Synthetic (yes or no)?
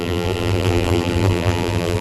yes